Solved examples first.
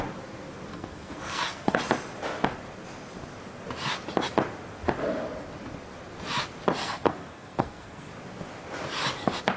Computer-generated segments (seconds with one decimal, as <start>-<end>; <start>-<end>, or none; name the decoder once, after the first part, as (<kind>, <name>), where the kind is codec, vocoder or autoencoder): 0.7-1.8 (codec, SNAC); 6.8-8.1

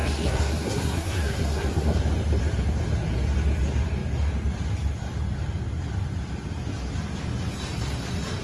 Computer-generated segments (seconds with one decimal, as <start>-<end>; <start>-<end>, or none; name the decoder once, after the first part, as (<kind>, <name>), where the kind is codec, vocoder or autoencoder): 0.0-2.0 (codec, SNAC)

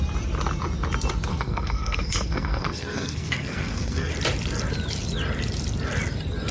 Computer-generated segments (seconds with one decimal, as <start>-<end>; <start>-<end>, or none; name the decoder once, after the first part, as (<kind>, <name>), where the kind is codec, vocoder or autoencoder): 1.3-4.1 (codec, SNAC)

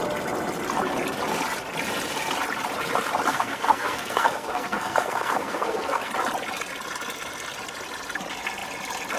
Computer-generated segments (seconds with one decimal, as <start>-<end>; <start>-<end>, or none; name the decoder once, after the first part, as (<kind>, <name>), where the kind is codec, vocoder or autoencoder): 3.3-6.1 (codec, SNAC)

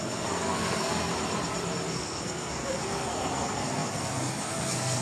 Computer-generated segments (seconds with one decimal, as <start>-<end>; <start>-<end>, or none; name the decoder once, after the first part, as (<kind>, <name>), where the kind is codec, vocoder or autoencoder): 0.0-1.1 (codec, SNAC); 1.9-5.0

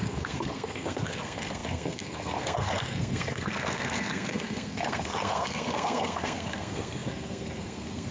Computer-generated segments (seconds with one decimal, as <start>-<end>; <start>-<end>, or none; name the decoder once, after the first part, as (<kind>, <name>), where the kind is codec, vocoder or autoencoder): 0.0-8.1 (codec, SNAC)

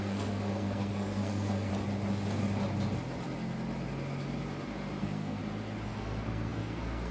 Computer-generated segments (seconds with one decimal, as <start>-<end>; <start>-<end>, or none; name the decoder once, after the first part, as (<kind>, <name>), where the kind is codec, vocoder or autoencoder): 0.0-1.7 (codec, SNAC); 5.0-5.4; 5.9-7.1

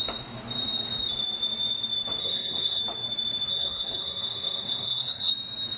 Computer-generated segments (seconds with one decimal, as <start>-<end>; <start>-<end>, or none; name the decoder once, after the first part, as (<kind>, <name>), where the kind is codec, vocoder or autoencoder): 2.2-2.8 (codec, SNAC); 3.5-5.3